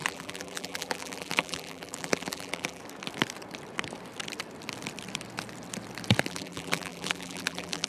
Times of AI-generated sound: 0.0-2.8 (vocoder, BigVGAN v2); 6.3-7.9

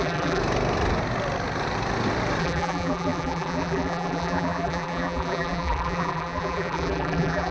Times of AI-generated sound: 0.0-0.4 (vocoder, BigVGAN v2); 2.4-7.5

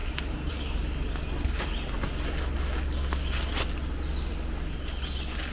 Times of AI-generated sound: none

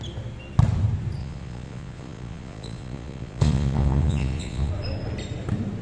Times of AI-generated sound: 1.2-4.7 (vocoder, Vocos)

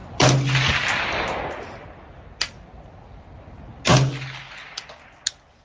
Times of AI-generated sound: none